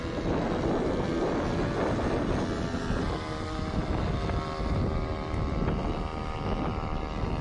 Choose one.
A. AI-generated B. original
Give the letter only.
B